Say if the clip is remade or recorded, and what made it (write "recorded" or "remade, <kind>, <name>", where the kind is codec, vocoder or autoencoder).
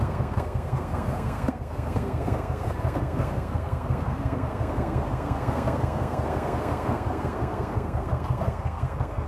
remade, codec, SNAC